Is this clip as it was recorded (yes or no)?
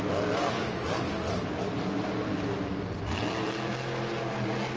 yes